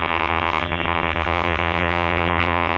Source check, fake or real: fake